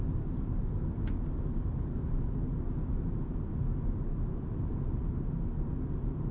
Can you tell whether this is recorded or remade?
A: recorded